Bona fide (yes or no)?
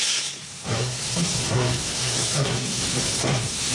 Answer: no